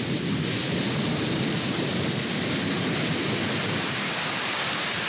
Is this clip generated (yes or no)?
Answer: no